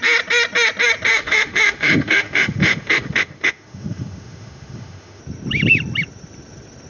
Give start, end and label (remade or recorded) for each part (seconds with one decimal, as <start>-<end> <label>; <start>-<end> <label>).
0.0-1.1 recorded; 1.1-5.2 remade; 5.2-6.9 recorded